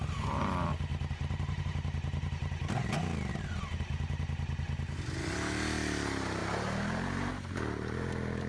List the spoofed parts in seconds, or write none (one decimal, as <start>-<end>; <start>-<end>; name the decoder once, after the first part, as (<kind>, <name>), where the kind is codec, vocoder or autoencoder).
none